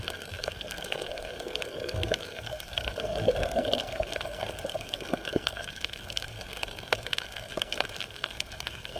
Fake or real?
fake